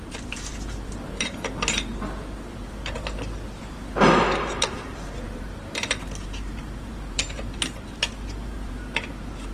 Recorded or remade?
remade